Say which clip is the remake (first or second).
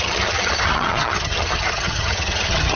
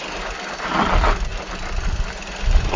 first